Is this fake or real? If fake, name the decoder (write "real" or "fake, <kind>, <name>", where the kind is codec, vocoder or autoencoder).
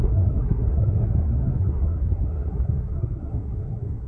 fake, codec, SNAC